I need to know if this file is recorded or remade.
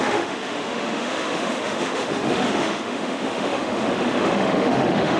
remade